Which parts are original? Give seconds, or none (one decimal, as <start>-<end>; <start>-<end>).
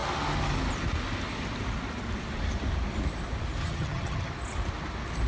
0.0-3.6; 4.3-5.3